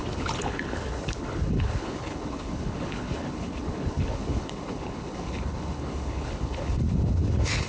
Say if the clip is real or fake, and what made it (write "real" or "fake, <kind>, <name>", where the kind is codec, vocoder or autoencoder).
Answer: fake, codec, HILCodec